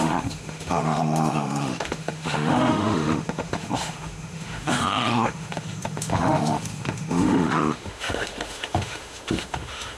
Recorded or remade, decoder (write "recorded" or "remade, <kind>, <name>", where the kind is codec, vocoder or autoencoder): remade, autoencoder, DAC-VAE